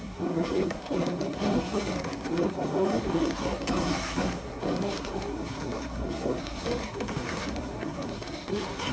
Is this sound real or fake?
fake